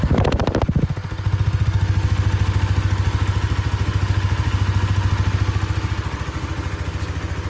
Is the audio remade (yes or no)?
no